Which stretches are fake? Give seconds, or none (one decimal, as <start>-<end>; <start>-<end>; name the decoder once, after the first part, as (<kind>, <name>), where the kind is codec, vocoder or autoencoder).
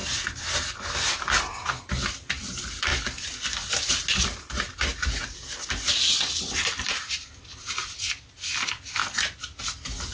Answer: 2.9-3.9 (vocoder, BigVGAN v2); 5.2-7.1; 9.0-9.6